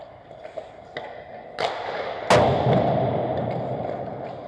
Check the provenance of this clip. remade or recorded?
recorded